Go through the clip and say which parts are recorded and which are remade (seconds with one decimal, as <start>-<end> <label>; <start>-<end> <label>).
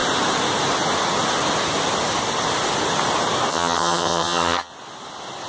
0.0-3.5 recorded; 3.5-4.7 remade; 4.7-5.5 recorded